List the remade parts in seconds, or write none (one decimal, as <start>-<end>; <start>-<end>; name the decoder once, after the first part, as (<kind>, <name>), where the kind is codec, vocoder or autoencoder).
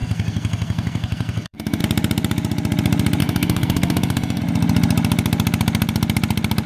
0.0-1.8 (codec, SNAC); 3.2-4.4